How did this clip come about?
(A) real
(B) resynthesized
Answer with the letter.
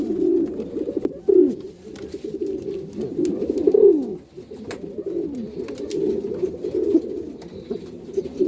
A